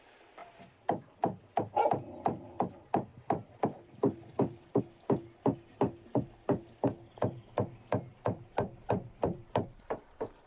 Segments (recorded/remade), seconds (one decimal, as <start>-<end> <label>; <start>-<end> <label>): 0.0-0.4 recorded; 0.4-1.5 remade; 1.5-3.1 recorded; 3.1-4.8 remade; 4.8-8.1 recorded; 8.1-10.0 remade; 10.0-10.5 recorded